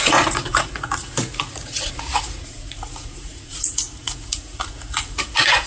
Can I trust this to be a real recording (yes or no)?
no